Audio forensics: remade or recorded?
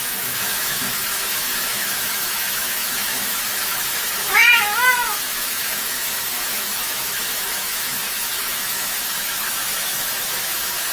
remade